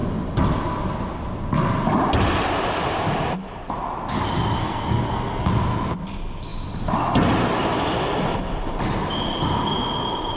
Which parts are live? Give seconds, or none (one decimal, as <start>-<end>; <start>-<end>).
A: 0.0-4.6; 5.5-10.4